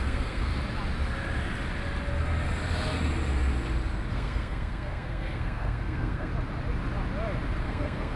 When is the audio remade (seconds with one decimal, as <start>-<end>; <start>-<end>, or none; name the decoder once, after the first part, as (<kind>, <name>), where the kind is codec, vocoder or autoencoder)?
0.0-0.5 (codec, SNAC); 4.1-6.3; 7.6-8.2